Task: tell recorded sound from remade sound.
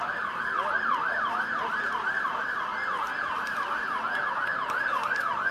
recorded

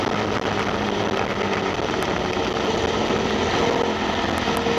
recorded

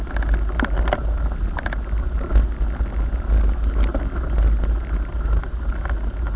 recorded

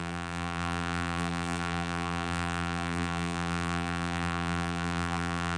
remade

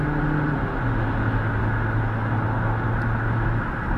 recorded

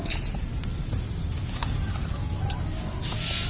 recorded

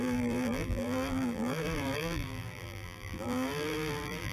remade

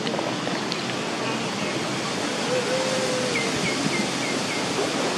recorded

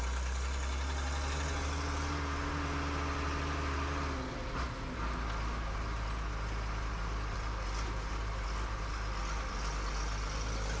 recorded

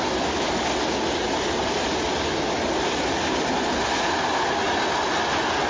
recorded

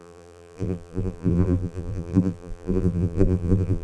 remade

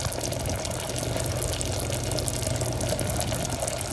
recorded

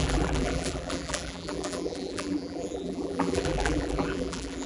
remade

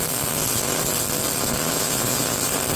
recorded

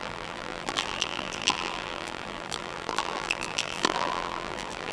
remade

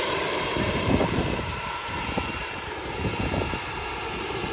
remade